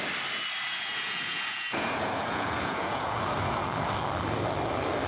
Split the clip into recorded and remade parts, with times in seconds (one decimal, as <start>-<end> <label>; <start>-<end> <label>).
0.0-0.7 recorded; 0.7-3.1 remade; 3.1-5.1 recorded